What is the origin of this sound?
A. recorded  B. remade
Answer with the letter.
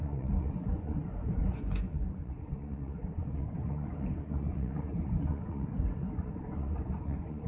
B